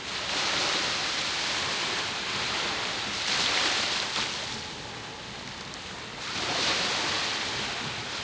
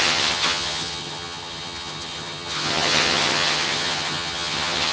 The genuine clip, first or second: first